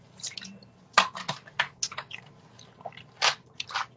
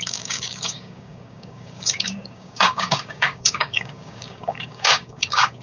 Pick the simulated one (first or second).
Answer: second